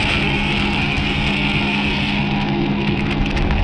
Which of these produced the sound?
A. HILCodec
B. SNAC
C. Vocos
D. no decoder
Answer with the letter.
B